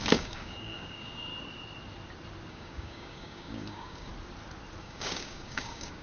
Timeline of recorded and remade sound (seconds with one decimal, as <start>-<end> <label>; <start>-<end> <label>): 0.0-1.3 remade; 1.3-2.5 recorded; 2.5-4.1 remade; 4.1-4.8 recorded; 4.8-6.0 remade